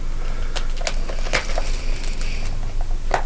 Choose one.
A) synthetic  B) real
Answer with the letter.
B